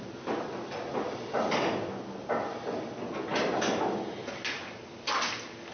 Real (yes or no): yes